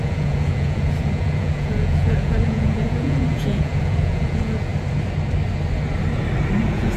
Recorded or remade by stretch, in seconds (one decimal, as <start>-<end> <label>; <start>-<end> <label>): 0.0-4.7 remade; 4.7-6.6 recorded; 6.6-7.0 remade

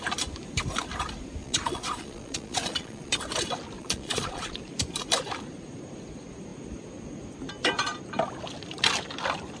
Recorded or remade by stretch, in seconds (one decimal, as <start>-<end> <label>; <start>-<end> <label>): 0.0-1.4 recorded; 1.4-3.1 remade; 3.1-3.8 recorded; 3.8-4.6 remade; 4.6-9.6 recorded

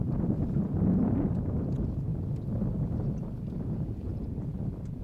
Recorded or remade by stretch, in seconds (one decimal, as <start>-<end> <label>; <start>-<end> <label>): 0.0-2.1 remade; 2.1-3.6 recorded; 3.6-4.1 remade; 4.1-5.0 recorded

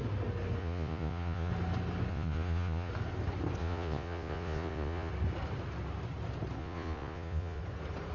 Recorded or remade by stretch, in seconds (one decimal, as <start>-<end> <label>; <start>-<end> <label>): 0.0-0.6 recorded; 0.6-1.5 remade; 1.5-2.1 recorded; 2.1-2.9 remade; 2.9-3.6 recorded; 3.6-5.1 remade; 5.1-6.6 recorded; 6.6-7.6 remade; 7.6-8.1 recorded

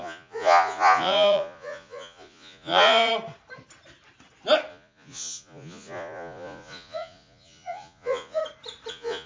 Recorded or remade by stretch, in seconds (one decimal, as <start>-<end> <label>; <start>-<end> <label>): 0.0-3.1 remade; 3.1-4.7 recorded; 4.7-8.4 remade; 8.4-8.9 recorded; 8.9-9.3 remade